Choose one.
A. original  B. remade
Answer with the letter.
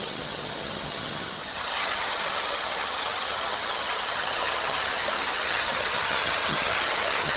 B